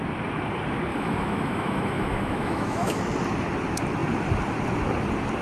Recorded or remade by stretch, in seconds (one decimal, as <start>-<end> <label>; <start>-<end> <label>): 0.0-0.9 recorded; 0.9-3.0 remade; 3.0-5.4 recorded